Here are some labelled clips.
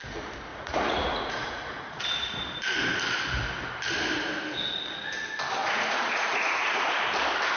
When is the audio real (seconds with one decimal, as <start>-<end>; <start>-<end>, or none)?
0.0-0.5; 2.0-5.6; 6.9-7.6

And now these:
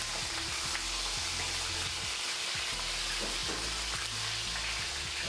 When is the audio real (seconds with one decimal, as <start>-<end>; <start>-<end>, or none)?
0.0-5.3

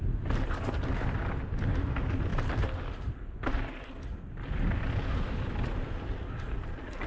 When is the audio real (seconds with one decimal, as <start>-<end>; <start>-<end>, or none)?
0.0-7.1